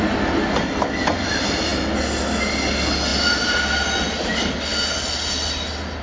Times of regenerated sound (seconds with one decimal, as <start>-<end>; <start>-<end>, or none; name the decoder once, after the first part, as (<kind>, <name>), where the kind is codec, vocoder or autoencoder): none